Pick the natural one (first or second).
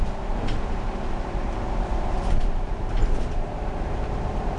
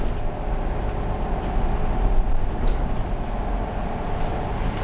second